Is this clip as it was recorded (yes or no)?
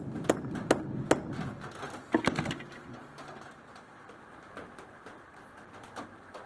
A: yes